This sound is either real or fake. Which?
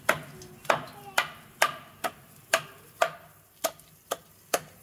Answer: real